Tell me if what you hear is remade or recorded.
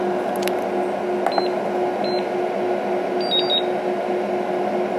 recorded